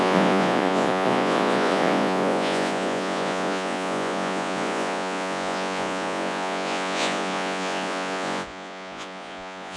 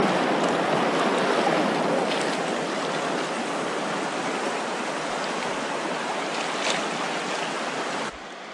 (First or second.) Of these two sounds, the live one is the second